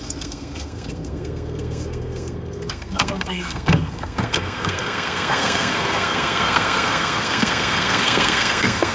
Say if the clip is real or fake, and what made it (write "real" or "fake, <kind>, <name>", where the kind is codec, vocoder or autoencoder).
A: fake, codec, SNAC